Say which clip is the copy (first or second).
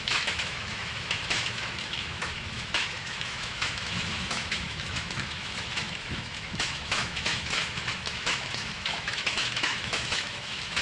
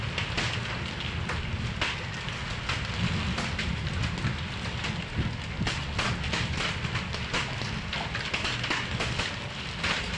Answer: first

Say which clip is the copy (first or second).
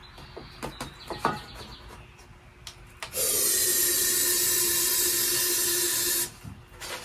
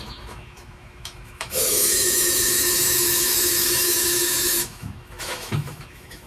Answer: second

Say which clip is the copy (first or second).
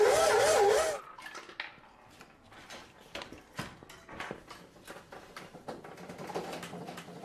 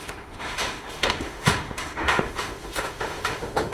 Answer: second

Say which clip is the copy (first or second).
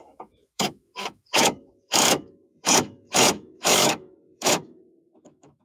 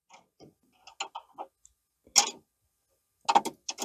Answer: first